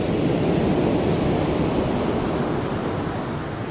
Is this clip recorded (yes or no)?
yes